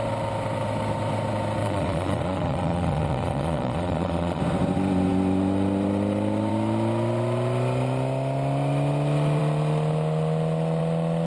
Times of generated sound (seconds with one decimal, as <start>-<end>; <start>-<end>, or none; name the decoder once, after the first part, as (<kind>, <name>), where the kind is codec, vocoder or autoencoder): 1.6-4.4 (vocoder, Vocos)